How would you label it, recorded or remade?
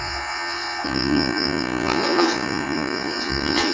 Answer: remade